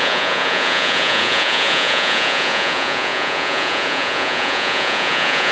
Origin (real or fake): fake